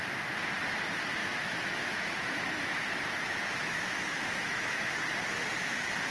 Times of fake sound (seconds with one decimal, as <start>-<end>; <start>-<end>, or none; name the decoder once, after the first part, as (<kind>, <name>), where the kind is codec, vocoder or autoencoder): 1.2-4.9 (autoencoder, DAC-VAE)